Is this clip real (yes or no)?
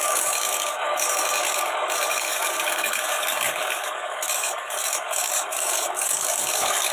no